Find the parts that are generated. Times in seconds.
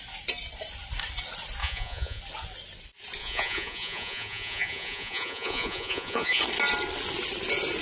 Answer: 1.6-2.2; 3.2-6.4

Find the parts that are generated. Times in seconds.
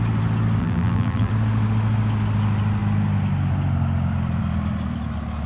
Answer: 0.6-1.3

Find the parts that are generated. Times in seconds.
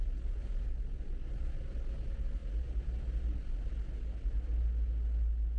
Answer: none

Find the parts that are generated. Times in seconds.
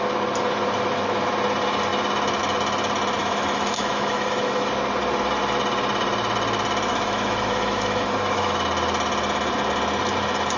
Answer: 3.2-4.7; 6.9-8.6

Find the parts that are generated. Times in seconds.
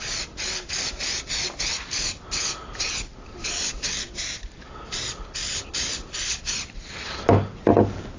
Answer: 3.4-4.2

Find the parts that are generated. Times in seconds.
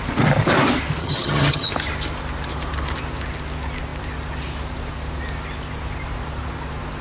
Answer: 1.0-1.7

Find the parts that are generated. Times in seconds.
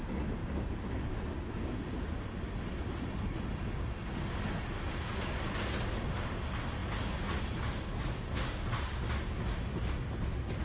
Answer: none